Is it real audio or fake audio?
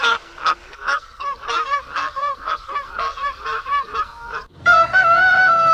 fake